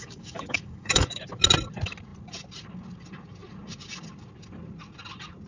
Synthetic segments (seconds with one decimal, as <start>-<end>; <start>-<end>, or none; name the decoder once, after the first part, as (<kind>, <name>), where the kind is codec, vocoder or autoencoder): 0.0-1.2 (codec, DAC)